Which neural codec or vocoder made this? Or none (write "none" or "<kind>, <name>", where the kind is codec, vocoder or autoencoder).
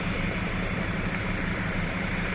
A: vocoder, BigVGAN v2